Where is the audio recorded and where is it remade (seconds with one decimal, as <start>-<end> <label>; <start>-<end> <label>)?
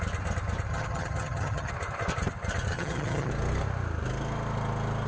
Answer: 0.0-0.7 recorded; 0.7-1.7 remade; 1.7-2.7 recorded; 2.7-3.3 remade; 3.3-5.1 recorded